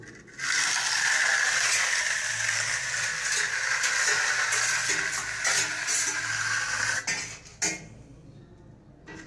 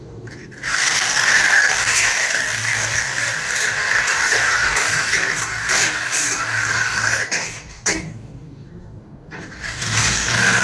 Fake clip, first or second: second